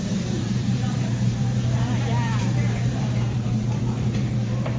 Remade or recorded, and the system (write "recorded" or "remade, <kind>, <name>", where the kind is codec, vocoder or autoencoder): remade, vocoder, BigVGAN v2